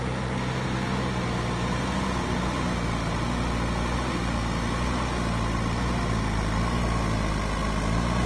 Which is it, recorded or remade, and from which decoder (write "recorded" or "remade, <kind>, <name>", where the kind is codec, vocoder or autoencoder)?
recorded